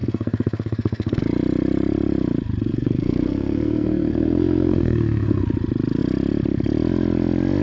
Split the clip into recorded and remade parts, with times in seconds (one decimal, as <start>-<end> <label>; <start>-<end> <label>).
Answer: 0.0-1.2 remade; 1.2-2.7 recorded; 2.7-5.4 remade; 5.4-7.6 recorded